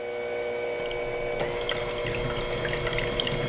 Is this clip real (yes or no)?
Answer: yes